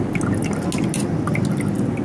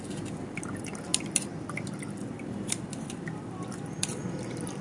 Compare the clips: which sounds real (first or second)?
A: first